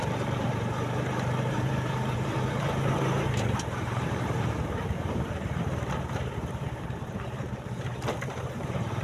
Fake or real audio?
fake